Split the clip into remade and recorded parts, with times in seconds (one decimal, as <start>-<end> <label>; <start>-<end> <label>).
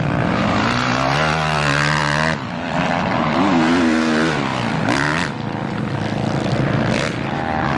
0.0-7.8 recorded